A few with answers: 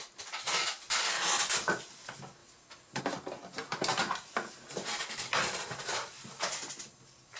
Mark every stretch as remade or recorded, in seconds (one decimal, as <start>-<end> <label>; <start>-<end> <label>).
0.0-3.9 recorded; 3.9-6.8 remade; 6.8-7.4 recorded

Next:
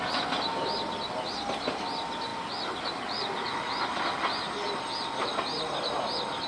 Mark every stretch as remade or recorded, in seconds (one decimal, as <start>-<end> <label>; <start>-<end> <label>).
0.0-6.5 recorded

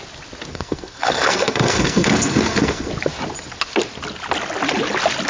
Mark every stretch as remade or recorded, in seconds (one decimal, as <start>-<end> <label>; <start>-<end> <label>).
0.0-0.5 recorded; 0.5-2.9 remade; 2.9-5.3 recorded

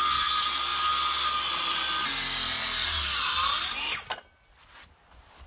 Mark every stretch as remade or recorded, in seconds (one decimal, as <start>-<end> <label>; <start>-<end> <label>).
0.0-5.5 recorded